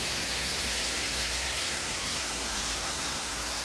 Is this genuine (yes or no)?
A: no